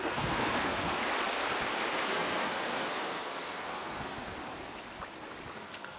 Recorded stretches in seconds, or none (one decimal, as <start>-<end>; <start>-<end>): 1.0-2.1; 4.2-5.5